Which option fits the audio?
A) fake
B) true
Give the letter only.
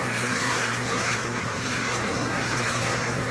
A